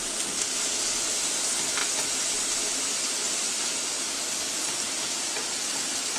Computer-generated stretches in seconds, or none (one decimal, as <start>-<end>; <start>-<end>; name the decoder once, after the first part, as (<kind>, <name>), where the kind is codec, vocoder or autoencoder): none